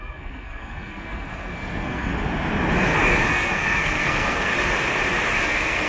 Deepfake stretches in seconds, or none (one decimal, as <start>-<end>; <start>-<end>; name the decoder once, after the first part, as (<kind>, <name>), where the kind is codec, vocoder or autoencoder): 0.0-2.1 (codec, SNAC); 3.3-4.5; 5.4-5.9